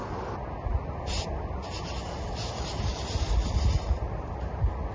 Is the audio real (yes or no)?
yes